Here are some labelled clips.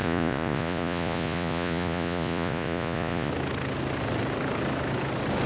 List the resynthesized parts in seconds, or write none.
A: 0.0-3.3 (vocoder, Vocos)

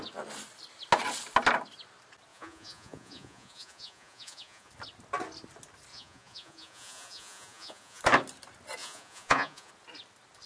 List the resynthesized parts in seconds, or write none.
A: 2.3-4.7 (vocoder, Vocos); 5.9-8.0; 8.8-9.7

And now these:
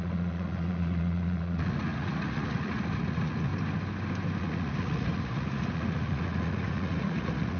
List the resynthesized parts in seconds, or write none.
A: 0.0-3.5 (vocoder, Vocos); 4.4-7.6

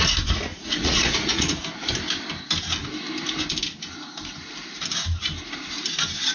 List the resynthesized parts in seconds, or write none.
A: 0.5-1.6 (vocoder, Vocos)